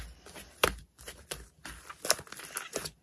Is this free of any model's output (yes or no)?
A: yes